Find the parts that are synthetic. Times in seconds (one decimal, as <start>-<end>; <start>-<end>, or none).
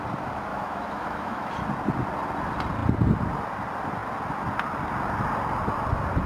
0.5-1.5